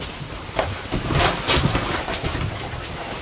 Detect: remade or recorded recorded